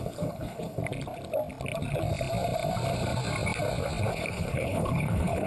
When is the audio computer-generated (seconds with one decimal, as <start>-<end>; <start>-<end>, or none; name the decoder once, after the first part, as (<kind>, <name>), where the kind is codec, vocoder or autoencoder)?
0.0-0.8 (codec, HILCodec); 4.1-5.5